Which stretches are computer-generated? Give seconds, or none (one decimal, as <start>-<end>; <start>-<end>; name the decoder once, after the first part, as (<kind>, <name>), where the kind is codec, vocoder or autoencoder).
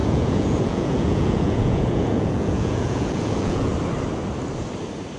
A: 0.0-3.7 (vocoder, Vocos)